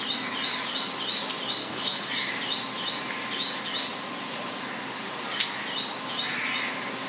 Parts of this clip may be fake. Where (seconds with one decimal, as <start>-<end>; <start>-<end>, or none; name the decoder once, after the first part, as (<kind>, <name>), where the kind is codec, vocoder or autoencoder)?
1.6-2.1 (codec, SNAC)